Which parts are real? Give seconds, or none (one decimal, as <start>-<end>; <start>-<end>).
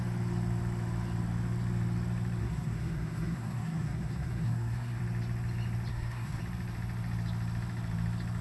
0.0-2.4; 5.0-5.9; 6.4-8.4